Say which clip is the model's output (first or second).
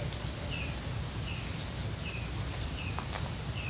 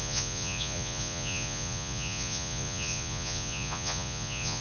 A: second